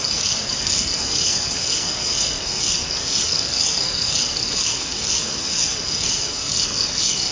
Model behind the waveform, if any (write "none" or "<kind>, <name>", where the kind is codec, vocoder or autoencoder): codec, SNAC